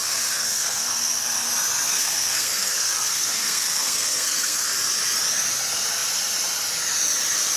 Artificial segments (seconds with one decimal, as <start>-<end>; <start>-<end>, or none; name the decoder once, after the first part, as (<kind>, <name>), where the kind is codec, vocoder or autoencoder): 0.0-1.5 (codec, SNAC); 1.9-4.7